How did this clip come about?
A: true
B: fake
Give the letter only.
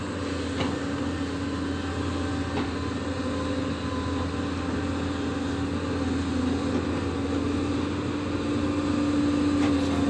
A